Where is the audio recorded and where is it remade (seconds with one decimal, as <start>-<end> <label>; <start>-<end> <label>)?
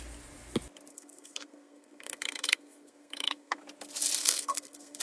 0.0-0.9 recorded; 0.9-3.6 remade; 3.6-4.2 recorded; 4.2-5.0 remade